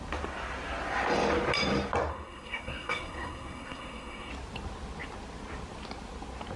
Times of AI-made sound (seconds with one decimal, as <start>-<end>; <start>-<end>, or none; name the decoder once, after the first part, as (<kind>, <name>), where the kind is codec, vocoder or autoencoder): 2.1-4.3 (codec, SNAC)